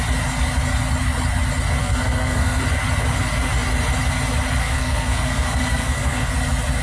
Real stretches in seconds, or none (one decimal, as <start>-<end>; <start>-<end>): 0.0-1.8; 2.6-4.6; 6.3-6.8